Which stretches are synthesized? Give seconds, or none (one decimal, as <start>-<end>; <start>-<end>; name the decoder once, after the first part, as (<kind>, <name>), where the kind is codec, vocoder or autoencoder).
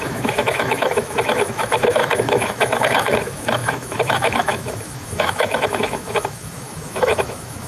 0.0-7.7 (autoencoder, DAC-VAE)